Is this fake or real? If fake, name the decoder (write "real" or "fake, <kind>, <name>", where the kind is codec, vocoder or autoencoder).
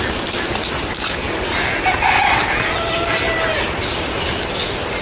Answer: real